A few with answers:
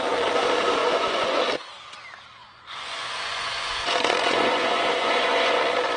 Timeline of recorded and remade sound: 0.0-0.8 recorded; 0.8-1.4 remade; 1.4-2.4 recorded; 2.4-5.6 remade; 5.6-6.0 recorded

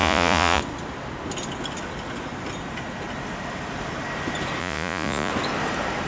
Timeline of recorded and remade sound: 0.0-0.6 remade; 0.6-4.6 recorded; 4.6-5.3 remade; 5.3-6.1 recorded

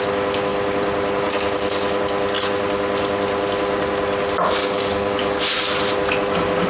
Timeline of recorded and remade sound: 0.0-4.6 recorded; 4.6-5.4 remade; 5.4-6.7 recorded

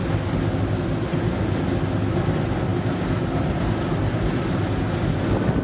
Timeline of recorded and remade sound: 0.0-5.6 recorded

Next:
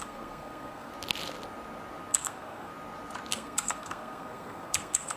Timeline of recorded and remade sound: 0.0-0.9 remade; 0.9-2.1 recorded; 2.1-2.7 remade; 2.7-3.3 recorded; 3.3-5.2 remade

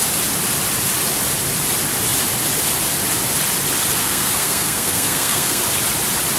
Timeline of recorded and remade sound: 0.0-4.0 recorded; 4.0-5.6 remade; 5.6-6.4 recorded

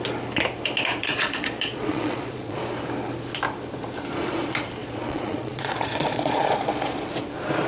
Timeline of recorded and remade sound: 0.0-1.0 recorded; 1.0-2.6 remade; 2.6-4.8 recorded; 4.8-7.0 remade; 7.0-7.7 recorded

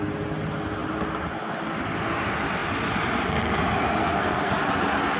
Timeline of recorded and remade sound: 0.0-4.0 recorded; 4.0-4.5 remade; 4.5-5.2 recorded